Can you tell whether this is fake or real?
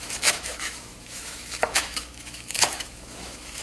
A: fake